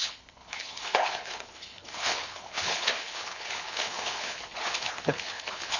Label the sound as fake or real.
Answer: fake